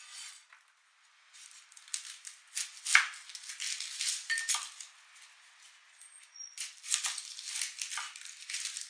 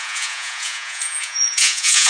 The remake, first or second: second